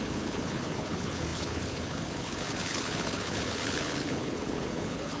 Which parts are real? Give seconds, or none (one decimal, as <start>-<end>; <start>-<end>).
none